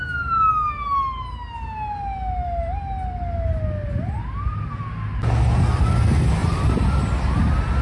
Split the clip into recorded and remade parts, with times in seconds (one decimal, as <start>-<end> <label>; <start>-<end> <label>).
0.0-6.4 recorded; 6.4-6.9 remade; 6.9-7.8 recorded